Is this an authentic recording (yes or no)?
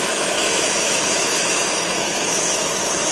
no